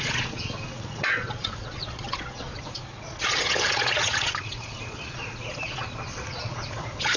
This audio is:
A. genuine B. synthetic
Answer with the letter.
B